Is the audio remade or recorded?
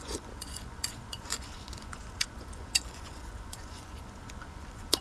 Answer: remade